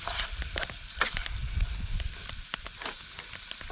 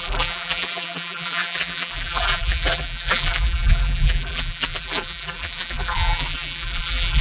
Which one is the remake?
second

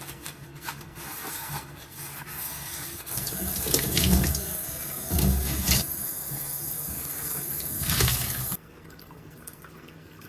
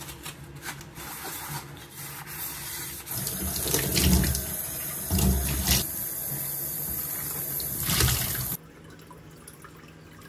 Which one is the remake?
first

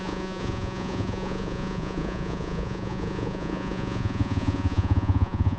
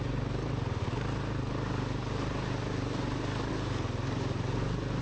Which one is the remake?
first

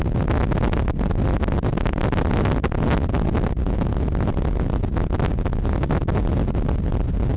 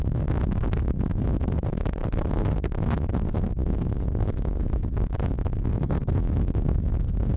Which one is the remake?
second